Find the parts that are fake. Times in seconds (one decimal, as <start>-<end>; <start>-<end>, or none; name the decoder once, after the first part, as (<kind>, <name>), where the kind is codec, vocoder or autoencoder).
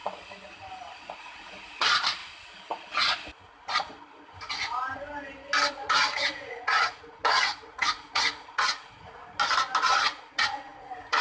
0.9-2.2 (vocoder, Vocos); 5.7-9.2; 10.0-11.2